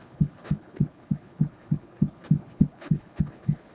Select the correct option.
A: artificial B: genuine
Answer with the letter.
A